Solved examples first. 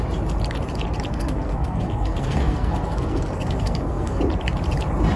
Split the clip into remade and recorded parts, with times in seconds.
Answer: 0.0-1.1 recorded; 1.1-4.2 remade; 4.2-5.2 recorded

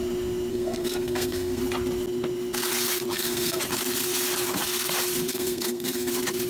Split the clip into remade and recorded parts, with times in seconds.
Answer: 0.0-0.5 recorded; 0.5-1.6 remade; 1.6-3.1 recorded; 3.1-3.6 remade; 3.6-5.3 recorded; 5.3-6.1 remade; 6.1-6.5 recorded

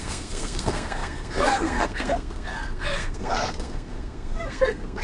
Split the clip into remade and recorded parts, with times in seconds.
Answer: 0.0-5.0 remade

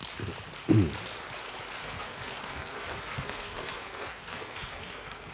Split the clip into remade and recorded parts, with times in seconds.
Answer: 0.0-1.8 recorded; 1.8-5.3 remade

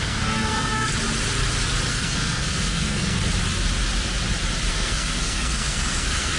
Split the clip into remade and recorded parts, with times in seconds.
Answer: 0.0-0.9 remade; 0.9-1.9 recorded; 1.9-3.2 remade; 3.2-4.7 recorded; 4.7-6.4 remade

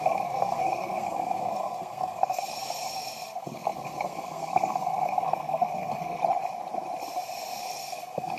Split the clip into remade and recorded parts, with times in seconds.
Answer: 0.0-6.2 remade; 6.2-7.6 recorded; 7.6-8.4 remade

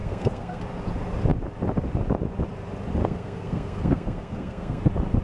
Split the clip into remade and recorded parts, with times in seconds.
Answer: 0.0-0.6 remade; 0.6-3.0 recorded; 3.0-4.8 remade; 4.8-5.2 recorded